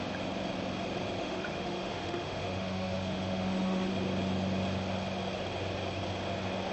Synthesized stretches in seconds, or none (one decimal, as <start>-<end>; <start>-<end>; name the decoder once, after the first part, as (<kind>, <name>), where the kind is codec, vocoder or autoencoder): 1.2-3.9 (autoencoder, DAC-VAE)